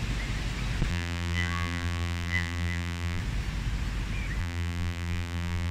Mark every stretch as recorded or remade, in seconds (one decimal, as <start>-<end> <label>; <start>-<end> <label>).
0.0-0.9 recorded; 0.9-3.2 remade; 3.2-4.4 recorded; 4.4-5.7 remade